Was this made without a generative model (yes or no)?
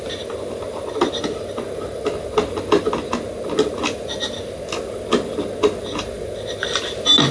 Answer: yes